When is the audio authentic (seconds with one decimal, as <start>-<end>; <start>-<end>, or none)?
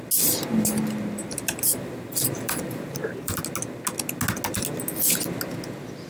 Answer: 0.0-1.2; 3.4-6.1